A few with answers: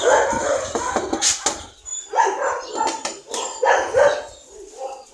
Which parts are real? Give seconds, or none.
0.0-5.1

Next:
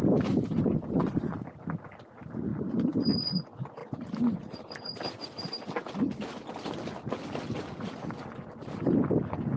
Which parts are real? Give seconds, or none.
0.0-1.0; 1.6-3.8; 6.0-9.6

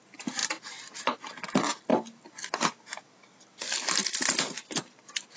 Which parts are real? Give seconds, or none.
0.0-5.4

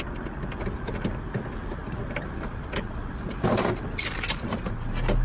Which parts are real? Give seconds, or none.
0.0-5.2

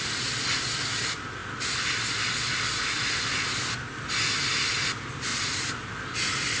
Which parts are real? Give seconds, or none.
0.0-6.6

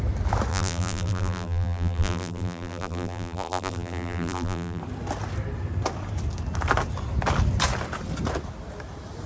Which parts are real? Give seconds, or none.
0.0-0.5; 4.8-9.3